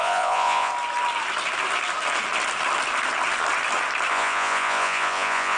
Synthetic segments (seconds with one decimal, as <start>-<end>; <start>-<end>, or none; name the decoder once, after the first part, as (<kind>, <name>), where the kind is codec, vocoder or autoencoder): 0.0-0.7 (vocoder, Vocos); 4.1-5.6

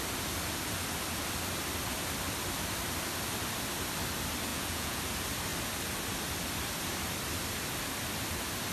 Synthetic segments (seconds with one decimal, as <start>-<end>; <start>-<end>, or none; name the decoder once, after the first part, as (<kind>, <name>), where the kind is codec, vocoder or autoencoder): 4.5-5.0 (vocoder, Vocos)